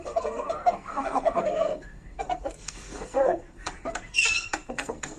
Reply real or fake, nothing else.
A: fake